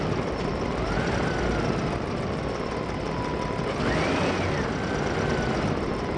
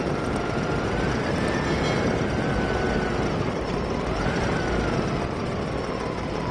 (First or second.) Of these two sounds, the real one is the second